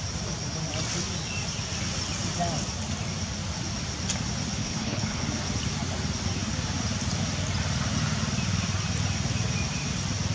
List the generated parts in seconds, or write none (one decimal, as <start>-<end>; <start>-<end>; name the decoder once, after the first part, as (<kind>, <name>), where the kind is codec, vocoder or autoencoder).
4.6-5.2 (codec, HILCodec)